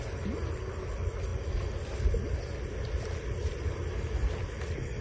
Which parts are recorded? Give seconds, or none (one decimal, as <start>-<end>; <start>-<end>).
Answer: 0.0-5.0